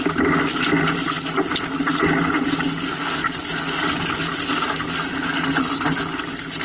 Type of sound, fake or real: real